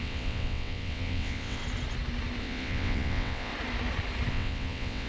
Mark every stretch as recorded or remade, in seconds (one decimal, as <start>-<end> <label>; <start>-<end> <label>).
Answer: 0.0-1.6 remade; 1.6-2.4 recorded; 2.4-3.5 remade; 3.5-4.3 recorded; 4.3-5.1 remade